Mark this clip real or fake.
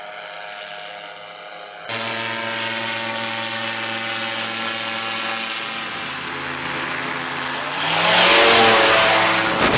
real